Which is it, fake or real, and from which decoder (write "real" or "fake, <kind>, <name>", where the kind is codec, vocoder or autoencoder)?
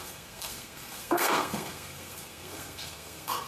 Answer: fake, codec, SNAC